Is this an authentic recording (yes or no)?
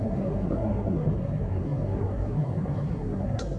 no